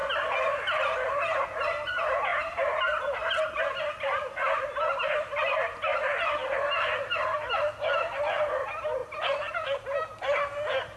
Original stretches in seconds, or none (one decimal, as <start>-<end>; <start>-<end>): 0.0-2.3; 3.4-9.0; 10.2-11.0